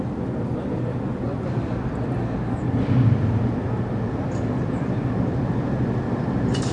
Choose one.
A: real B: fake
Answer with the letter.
A